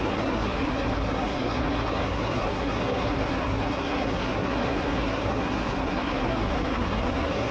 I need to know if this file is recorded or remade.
remade